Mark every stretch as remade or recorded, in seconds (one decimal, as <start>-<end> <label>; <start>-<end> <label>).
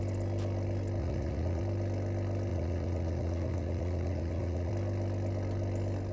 0.0-1.0 recorded; 1.0-1.6 remade; 1.6-2.5 recorded; 2.5-4.7 remade; 4.7-6.1 recorded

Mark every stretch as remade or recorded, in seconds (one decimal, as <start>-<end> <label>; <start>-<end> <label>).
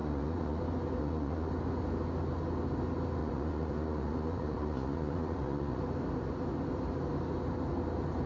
0.0-0.6 remade; 0.6-1.0 recorded; 1.0-1.5 remade; 1.5-3.2 recorded; 3.2-5.8 remade; 5.8-8.3 recorded